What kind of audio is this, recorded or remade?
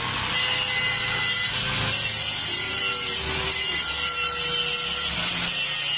recorded